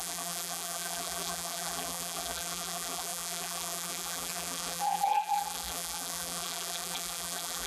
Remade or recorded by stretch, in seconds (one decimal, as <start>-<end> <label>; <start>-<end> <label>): 0.0-7.7 remade

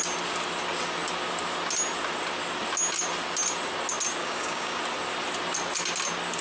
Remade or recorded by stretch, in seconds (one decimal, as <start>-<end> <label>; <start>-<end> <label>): 0.0-4.2 recorded; 4.2-4.8 remade; 4.8-6.4 recorded

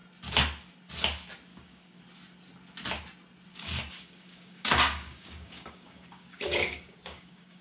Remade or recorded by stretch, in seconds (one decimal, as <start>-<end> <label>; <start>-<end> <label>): 0.0-1.5 recorded; 1.5-2.0 remade; 2.0-3.5 recorded; 3.5-7.6 remade